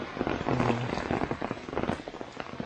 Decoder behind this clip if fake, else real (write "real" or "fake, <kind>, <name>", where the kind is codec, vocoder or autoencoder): real